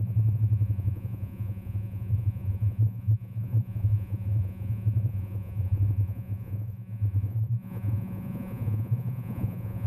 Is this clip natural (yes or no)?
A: no